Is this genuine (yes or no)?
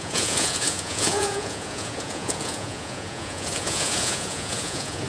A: no